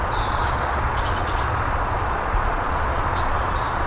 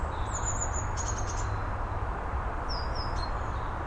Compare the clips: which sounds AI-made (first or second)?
first